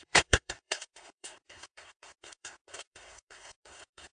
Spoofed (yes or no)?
yes